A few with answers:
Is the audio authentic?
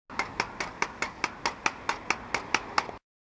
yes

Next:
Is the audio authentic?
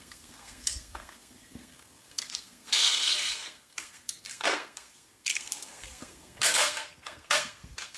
no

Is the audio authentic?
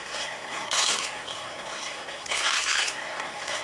no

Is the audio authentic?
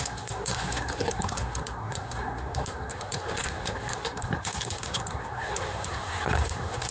no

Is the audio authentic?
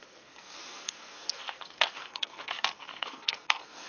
no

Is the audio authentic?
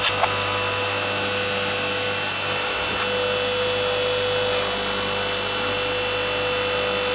yes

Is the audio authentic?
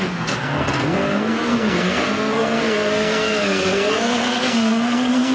no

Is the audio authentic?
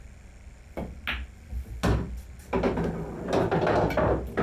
yes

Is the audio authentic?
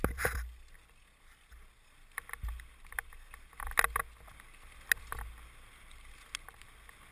yes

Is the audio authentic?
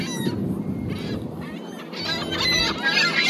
yes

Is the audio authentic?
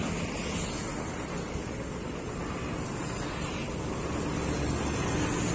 yes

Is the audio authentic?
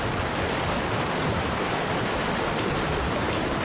yes